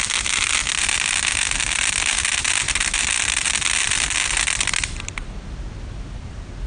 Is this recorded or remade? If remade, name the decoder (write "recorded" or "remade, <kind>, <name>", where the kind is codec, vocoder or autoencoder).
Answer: recorded